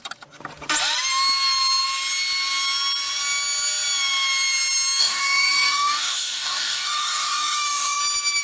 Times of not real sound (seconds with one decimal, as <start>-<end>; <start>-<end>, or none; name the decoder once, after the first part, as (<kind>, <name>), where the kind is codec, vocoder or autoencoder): 5.0-8.0 (codec, DAC)